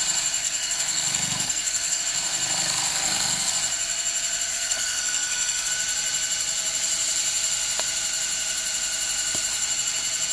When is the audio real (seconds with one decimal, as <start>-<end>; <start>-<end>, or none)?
0.0-0.4; 2.0-2.9; 3.5-4.5; 5.7-10.3